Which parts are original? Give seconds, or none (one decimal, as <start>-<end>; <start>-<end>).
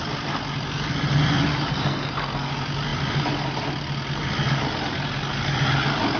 0.0-1.7; 2.5-6.2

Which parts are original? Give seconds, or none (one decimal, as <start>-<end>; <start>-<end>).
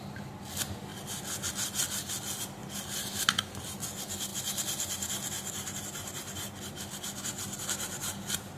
0.0-8.6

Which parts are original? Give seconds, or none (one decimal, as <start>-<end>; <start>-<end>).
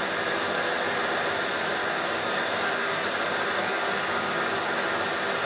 0.0-1.8; 2.9-3.6; 4.7-5.5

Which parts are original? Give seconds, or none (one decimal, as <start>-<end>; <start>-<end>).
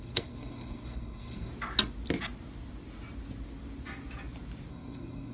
1.5-4.7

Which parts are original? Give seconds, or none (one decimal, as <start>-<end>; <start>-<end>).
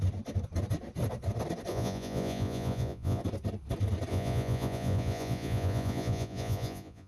0.0-1.7; 3.2-4.1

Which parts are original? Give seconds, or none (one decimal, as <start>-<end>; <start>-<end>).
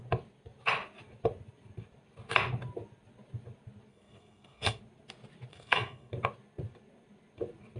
0.0-3.9; 4.8-5.5; 6.1-7.8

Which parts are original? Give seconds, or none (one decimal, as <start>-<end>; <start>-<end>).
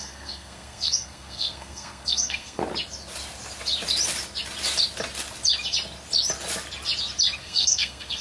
2.6-7.4